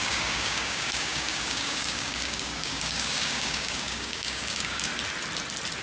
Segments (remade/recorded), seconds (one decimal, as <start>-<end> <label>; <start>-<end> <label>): 0.0-4.9 remade; 4.9-5.8 recorded